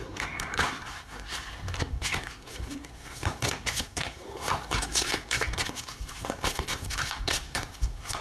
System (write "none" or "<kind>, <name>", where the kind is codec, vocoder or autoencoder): codec, SNAC